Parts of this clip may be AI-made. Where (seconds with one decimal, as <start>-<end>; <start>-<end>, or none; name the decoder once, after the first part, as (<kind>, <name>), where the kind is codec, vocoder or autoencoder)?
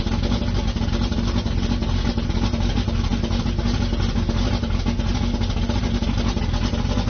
none